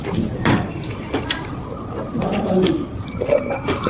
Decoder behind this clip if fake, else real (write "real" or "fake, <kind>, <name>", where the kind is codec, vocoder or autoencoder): fake, vocoder, BigVGAN v2